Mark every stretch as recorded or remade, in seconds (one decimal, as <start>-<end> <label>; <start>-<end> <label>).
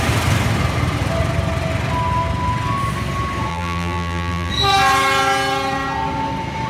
0.0-3.5 recorded; 3.5-4.5 remade; 4.5-6.7 recorded